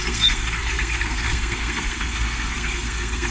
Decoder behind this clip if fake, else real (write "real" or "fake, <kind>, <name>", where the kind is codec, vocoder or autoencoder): fake, codec, SNAC